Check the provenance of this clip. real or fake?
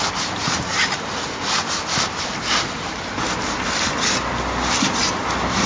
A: real